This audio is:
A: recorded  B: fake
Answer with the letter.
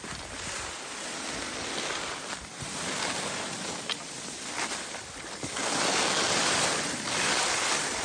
A